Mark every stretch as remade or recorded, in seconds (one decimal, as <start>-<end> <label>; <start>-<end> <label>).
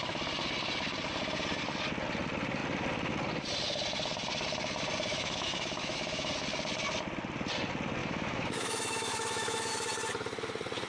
0.0-5.1 recorded; 5.1-6.3 remade; 6.3-8.0 recorded; 8.0-9.7 remade; 9.7-10.9 recorded